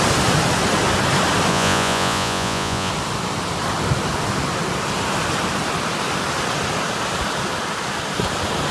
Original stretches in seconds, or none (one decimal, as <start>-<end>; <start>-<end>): 0.0-1.5; 2.9-8.7